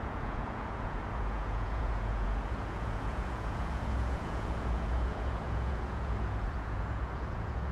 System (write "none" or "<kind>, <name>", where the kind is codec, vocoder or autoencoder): vocoder, Vocos